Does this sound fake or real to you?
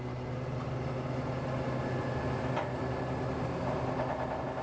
real